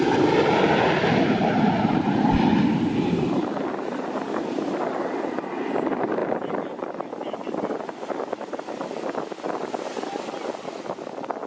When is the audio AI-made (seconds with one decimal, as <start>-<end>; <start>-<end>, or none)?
none

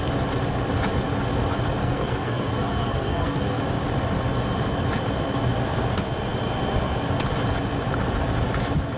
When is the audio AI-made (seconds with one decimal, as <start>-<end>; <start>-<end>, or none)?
1.8-3.6